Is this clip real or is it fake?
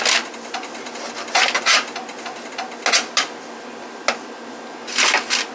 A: real